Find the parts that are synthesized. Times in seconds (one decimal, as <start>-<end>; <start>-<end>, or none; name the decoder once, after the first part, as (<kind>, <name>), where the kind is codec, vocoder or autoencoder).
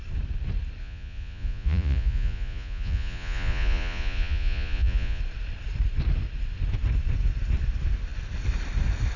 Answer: 0.8-5.2 (vocoder, Vocos)